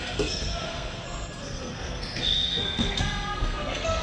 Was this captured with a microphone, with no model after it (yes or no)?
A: no